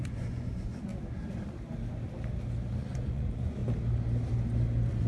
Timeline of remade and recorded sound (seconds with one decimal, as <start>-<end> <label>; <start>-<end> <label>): 0.0-0.9 remade; 0.9-2.8 recorded; 2.8-3.6 remade; 3.6-5.1 recorded